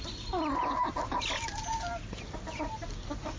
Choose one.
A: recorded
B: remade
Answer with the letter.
A